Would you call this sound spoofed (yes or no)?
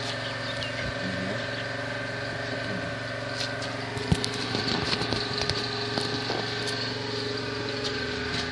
no